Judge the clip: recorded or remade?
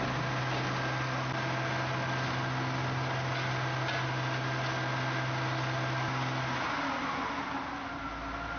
recorded